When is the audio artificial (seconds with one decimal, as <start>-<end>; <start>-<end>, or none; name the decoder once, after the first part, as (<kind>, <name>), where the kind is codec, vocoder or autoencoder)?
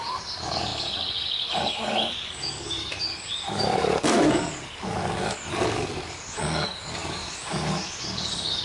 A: 0.0-8.6 (codec, DAC)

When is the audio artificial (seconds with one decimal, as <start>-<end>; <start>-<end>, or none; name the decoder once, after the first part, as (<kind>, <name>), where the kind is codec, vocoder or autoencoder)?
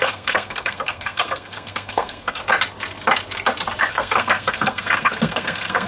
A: 0.0-2.4 (codec, SNAC); 3.9-5.9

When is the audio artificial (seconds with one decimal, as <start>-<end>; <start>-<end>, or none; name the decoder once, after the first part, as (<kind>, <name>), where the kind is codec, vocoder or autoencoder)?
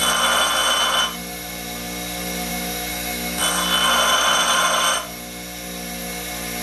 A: 2.9-3.4 (autoencoder, DAC-VAE)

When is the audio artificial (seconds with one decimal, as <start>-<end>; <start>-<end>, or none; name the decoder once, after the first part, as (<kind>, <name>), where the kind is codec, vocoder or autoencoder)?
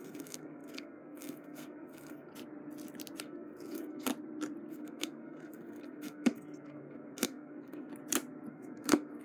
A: 0.0-2.3 (codec, SNAC); 3.2-4.1; 4.7-7.9; 8.5-9.2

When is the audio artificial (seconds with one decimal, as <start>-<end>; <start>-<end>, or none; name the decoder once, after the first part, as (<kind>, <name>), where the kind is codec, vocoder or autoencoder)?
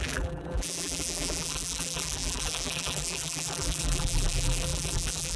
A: 0.0-5.4 (vocoder, BigVGAN v2)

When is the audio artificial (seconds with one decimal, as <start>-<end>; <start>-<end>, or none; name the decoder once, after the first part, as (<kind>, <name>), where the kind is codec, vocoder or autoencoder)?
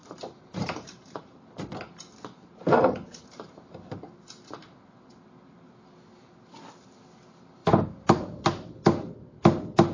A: 0.0-1.2 (vocoder, BigVGAN v2); 2.6-4.2; 7.6-8.4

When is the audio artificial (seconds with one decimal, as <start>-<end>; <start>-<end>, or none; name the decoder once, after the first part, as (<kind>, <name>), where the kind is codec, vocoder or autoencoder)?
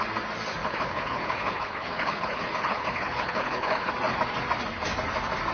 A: 0.6-3.9 (codec, HILCodec)